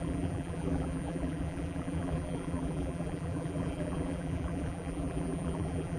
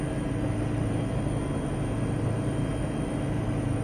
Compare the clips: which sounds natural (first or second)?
second